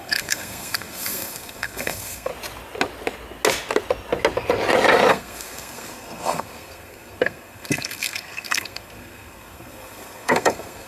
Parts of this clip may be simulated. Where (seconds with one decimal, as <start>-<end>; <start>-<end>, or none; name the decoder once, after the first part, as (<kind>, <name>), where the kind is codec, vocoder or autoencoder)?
0.0-2.3 (codec, SNAC); 5.1-10.9